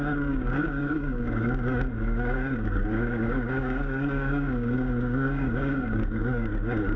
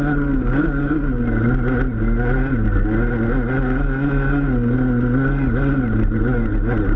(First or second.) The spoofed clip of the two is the first